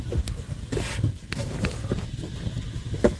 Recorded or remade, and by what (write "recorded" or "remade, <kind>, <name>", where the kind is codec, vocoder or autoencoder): recorded